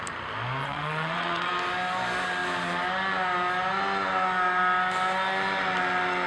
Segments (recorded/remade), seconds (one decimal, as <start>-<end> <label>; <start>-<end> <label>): 0.0-0.6 recorded; 0.6-1.5 remade; 1.5-6.3 recorded